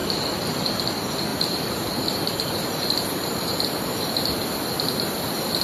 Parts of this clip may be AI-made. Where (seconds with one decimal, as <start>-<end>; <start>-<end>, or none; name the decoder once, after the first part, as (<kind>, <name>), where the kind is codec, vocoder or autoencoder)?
1.3-4.1 (vocoder, BigVGAN v2)